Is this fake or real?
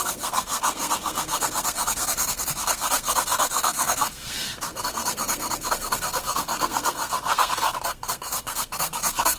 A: fake